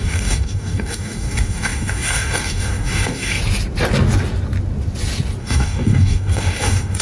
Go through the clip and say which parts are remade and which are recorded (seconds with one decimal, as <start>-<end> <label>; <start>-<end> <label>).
0.0-3.4 remade; 3.4-5.4 recorded; 5.4-7.0 remade